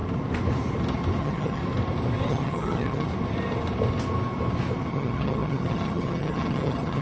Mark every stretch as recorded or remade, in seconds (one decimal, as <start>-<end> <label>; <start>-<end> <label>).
0.0-1.2 recorded; 1.2-1.6 remade; 1.6-2.3 recorded; 2.3-3.1 remade; 3.1-4.9 recorded; 4.9-7.0 remade